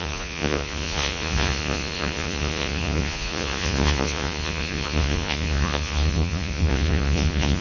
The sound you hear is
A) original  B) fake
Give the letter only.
B